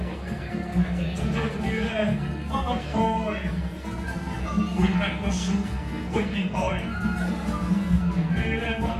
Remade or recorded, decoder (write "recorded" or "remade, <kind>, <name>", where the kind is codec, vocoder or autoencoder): remade, codec, SNAC